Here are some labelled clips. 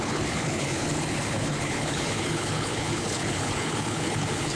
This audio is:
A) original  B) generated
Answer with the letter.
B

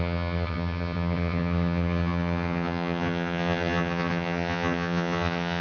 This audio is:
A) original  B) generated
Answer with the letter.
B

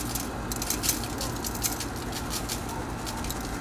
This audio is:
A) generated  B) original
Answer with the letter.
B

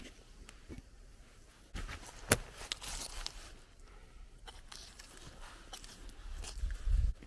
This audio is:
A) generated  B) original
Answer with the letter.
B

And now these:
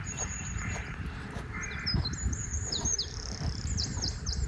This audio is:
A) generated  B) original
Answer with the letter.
A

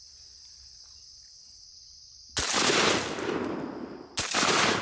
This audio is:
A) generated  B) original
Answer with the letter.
B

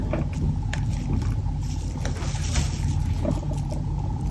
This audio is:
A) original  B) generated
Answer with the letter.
A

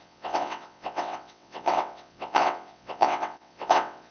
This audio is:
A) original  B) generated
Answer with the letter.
B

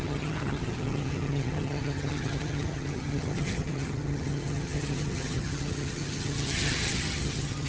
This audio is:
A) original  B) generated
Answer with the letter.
B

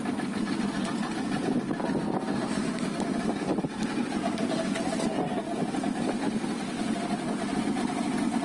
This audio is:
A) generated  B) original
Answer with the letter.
B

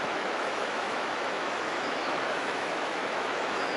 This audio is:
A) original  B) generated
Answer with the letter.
B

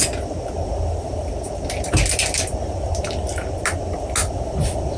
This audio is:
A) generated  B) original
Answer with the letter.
B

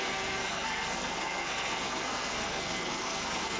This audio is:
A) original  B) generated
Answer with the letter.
B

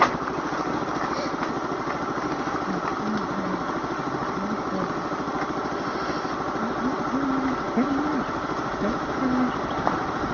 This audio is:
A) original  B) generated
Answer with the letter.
A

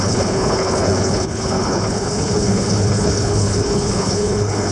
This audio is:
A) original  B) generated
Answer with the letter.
B